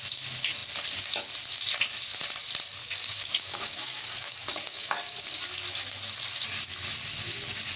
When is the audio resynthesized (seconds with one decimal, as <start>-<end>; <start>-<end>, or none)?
2.8-5.2